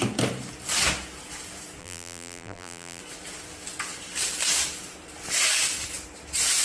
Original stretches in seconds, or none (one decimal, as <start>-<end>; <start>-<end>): 0.0-1.8; 3.0-6.6